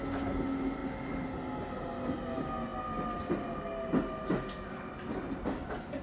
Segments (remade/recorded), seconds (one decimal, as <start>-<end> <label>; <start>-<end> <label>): 0.0-6.0 recorded